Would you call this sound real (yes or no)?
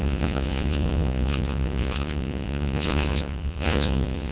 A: no